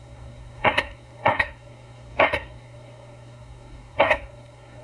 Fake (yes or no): yes